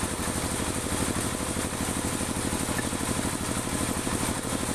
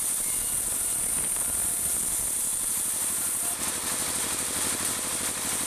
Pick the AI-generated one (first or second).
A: second